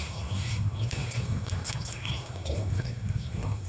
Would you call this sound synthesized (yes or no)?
yes